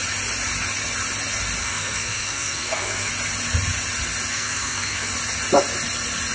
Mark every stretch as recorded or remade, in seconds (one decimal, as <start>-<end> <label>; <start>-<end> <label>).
0.0-1.6 recorded; 1.6-3.1 remade; 3.1-4.3 recorded; 4.3-5.1 remade; 5.1-6.3 recorded